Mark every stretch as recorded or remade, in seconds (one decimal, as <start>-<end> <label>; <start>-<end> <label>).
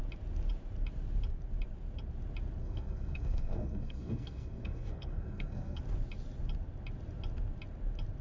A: 0.0-2.6 recorded; 2.6-5.8 remade; 5.8-8.2 recorded